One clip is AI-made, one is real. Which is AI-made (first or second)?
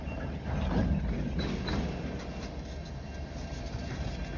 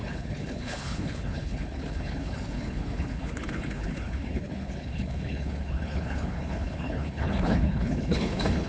second